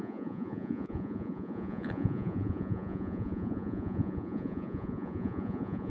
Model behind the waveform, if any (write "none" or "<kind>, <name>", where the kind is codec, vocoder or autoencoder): vocoder, Vocos